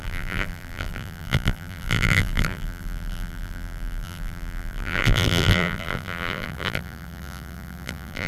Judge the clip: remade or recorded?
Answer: remade